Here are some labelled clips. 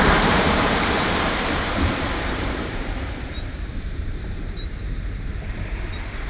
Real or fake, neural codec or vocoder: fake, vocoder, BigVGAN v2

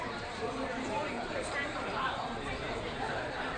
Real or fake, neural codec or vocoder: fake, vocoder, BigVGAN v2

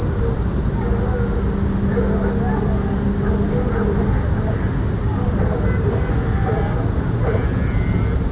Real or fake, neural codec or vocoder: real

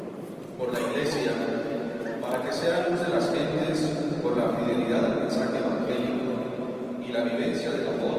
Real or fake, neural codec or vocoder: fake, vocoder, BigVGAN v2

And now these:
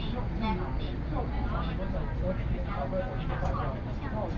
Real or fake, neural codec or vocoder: real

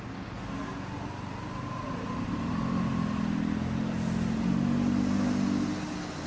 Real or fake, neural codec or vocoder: real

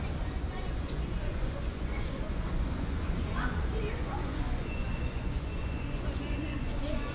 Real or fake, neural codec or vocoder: fake, vocoder, Vocos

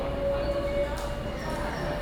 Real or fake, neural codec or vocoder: real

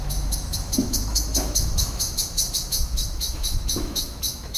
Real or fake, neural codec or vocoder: fake, autoencoder, DAC-VAE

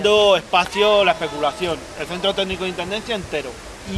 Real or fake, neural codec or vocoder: real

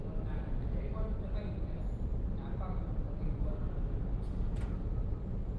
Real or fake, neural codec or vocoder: real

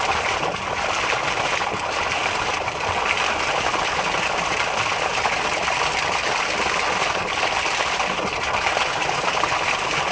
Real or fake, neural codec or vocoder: real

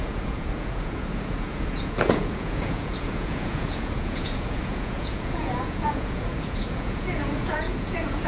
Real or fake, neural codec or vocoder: fake, vocoder, Vocos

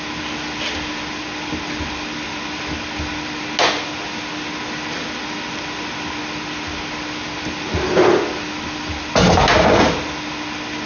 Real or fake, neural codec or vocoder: real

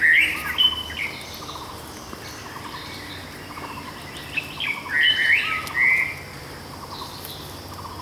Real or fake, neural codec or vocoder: real